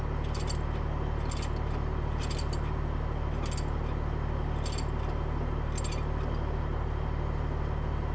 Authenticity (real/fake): real